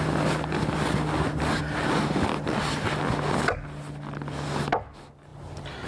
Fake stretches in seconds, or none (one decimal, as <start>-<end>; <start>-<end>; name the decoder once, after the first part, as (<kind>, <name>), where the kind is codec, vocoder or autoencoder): none

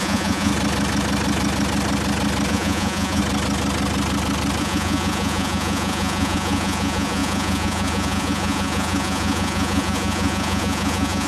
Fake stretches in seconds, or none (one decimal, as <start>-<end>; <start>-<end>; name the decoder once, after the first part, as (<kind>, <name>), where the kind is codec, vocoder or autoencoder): 0.0-0.5 (vocoder, Vocos); 2.5-3.2; 4.6-11.3

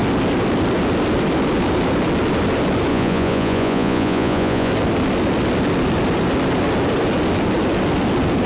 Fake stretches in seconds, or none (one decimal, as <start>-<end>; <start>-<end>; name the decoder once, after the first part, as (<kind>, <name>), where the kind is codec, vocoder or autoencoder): 2.9-4.7 (vocoder, Vocos)

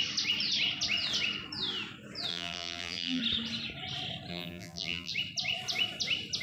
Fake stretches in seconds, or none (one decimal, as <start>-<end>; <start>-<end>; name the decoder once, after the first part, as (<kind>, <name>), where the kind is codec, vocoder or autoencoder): 2.3-3.2 (vocoder, BigVGAN v2); 4.3-5.1

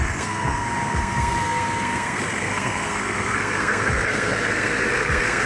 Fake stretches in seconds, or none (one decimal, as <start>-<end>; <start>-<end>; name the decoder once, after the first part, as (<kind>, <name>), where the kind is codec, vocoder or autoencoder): 0.0-5.5 (codec, SNAC)

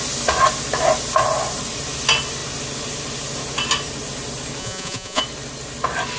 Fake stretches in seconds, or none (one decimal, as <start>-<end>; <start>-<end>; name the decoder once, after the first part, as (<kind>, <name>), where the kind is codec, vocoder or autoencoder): 4.6-5.2 (vocoder, Vocos)

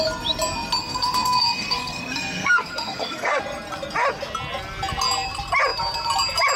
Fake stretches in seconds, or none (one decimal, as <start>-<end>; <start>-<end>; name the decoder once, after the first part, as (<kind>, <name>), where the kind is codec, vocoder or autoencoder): 0.8-3.4 (codec, SNAC)

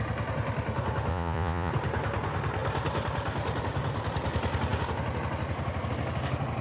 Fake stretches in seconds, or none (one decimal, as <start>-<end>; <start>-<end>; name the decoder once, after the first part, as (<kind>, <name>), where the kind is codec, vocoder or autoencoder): 1.1-1.7 (vocoder, Vocos)